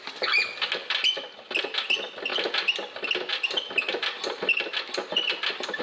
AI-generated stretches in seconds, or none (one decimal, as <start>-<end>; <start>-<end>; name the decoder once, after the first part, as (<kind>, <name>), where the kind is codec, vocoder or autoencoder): none